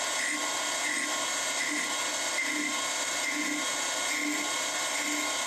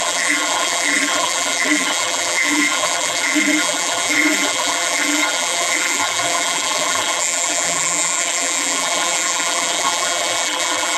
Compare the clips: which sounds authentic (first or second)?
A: first